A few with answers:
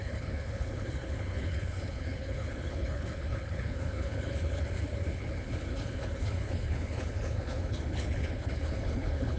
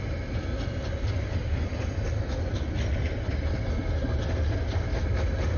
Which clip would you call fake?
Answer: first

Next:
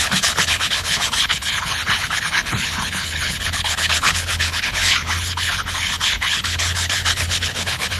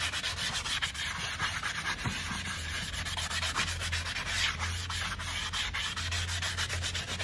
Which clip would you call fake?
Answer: first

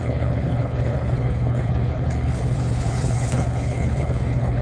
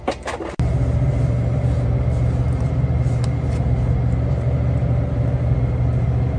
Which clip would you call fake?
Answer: first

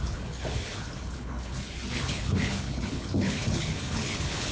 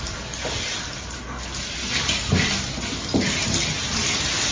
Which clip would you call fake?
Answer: first